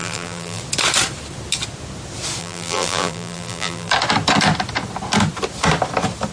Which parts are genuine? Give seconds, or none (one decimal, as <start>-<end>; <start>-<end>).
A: 0.6-2.4; 3.9-6.3